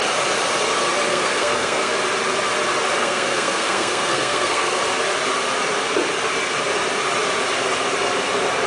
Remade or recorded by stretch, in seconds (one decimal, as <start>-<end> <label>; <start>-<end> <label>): 0.0-1.1 recorded; 1.1-1.9 remade; 1.9-3.0 recorded; 3.0-4.8 remade; 4.8-8.7 recorded